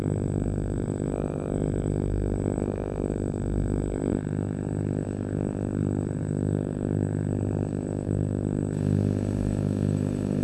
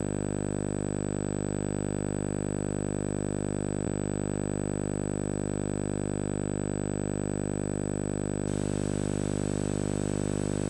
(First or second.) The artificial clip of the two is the first